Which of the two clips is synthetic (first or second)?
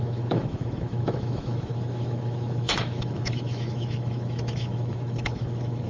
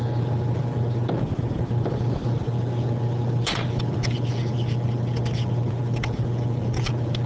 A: first